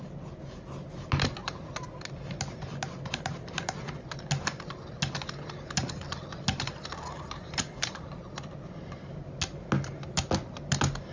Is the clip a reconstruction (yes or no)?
no